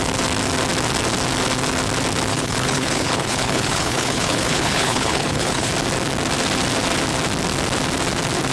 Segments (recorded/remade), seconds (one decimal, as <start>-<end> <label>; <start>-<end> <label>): 0.0-2.3 recorded; 2.3-5.7 remade; 5.7-8.5 recorded